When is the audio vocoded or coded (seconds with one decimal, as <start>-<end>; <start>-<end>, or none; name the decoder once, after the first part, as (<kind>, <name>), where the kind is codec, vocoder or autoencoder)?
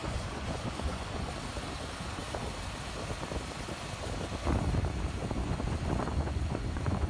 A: 0.0-1.3 (vocoder, Vocos); 5.2-7.1